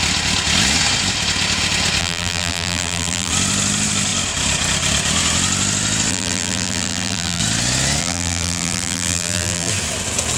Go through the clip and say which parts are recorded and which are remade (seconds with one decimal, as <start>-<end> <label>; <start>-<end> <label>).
0.0-2.0 recorded; 2.0-3.3 remade; 3.3-6.1 recorded; 6.1-7.4 remade; 7.4-8.0 recorded; 8.0-9.7 remade; 9.7-10.4 recorded